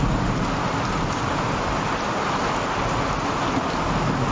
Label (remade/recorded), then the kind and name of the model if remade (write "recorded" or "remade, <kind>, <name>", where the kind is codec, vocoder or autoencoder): recorded